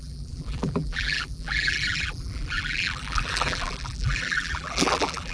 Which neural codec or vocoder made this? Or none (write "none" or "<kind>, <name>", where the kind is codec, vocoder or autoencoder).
vocoder, BigVGAN v2